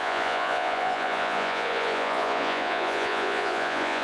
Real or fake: fake